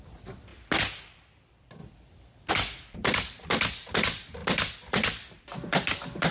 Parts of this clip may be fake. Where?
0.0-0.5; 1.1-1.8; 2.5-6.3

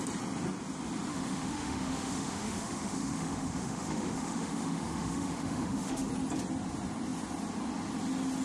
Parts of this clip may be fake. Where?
1.1-6.1